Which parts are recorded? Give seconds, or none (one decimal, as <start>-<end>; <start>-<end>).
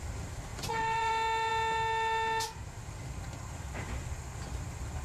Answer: 0.0-0.5; 1.1-5.0